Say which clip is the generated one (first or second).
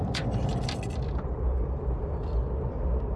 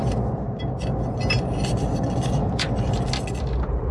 first